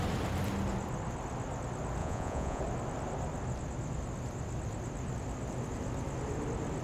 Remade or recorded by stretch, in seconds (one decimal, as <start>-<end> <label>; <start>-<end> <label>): 0.0-2.0 recorded; 2.0-2.6 remade; 2.6-6.8 recorded